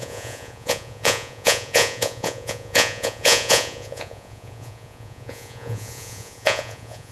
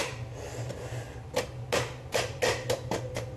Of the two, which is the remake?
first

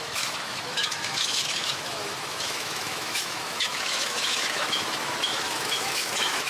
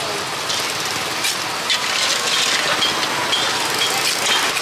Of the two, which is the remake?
first